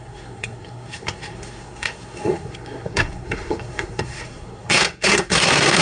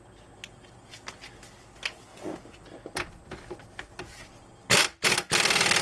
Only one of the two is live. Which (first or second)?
second